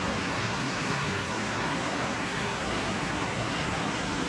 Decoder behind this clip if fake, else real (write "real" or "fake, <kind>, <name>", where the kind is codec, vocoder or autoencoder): fake, codec, SNAC